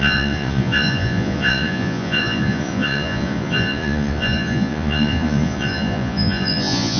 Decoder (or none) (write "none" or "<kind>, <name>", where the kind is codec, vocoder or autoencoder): vocoder, Vocos